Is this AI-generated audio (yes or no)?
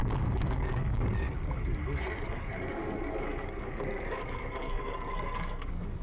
yes